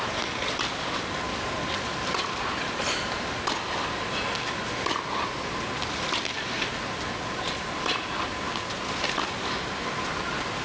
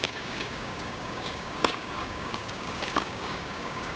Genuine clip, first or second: first